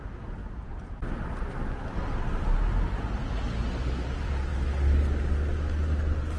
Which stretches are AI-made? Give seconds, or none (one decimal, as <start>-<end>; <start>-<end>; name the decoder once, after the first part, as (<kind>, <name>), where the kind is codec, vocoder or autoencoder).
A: 0.4-1.0 (vocoder, Vocos)